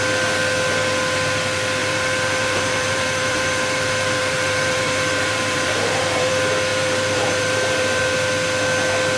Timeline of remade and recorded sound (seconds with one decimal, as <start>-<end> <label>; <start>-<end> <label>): 0.0-1.8 recorded; 1.8-6.3 remade; 6.3-6.7 recorded; 6.7-8.0 remade; 8.0-9.2 recorded

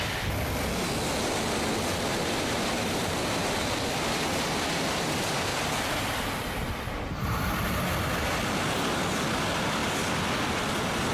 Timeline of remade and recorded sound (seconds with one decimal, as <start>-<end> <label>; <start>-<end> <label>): 0.0-2.1 recorded; 2.1-3.1 remade; 3.1-5.5 recorded; 5.5-6.8 remade; 6.8-11.1 recorded

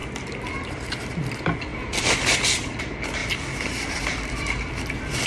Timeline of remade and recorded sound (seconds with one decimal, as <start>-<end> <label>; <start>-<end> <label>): 0.0-1.7 recorded; 1.7-2.8 remade; 2.8-3.2 recorded; 3.2-5.3 remade

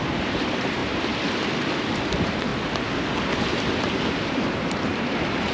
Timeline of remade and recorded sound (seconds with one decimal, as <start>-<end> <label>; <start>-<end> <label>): 0.0-2.5 remade; 2.5-3.8 recorded; 3.8-5.5 remade